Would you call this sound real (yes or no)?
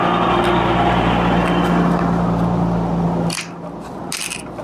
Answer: yes